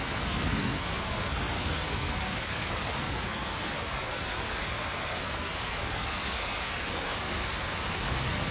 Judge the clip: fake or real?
fake